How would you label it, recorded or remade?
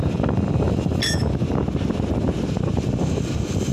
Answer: recorded